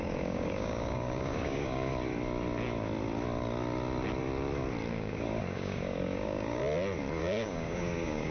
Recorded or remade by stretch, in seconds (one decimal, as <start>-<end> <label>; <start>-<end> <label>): 0.0-1.9 remade; 1.9-4.9 recorded; 4.9-6.6 remade; 6.6-7.2 recorded; 7.2-8.3 remade